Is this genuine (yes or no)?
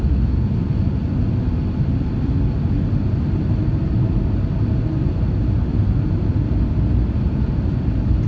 yes